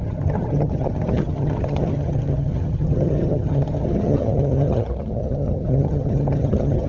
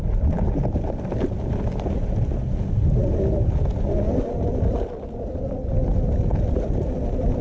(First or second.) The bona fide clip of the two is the second